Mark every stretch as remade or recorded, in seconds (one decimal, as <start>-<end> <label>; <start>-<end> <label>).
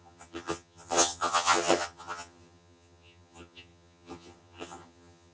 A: 0.0-5.3 remade